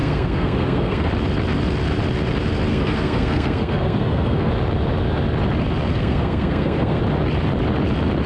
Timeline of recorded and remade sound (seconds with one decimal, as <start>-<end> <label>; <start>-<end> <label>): 0.0-1.1 remade; 1.1-2.7 recorded; 2.7-4.5 remade; 4.5-5.9 recorded; 5.9-7.0 remade; 7.0-8.3 recorded